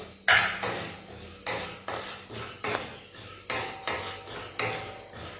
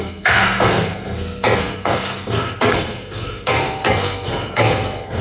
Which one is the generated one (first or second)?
second